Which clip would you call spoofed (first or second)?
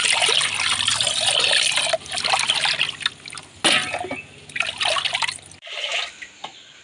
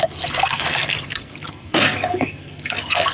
second